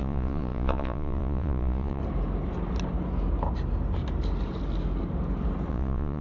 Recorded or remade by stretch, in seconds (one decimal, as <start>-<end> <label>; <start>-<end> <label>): 0.0-2.0 remade; 2.0-5.7 recorded; 5.7-6.2 remade